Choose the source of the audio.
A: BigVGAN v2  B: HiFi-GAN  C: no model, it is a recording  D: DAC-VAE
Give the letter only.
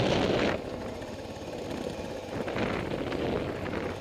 C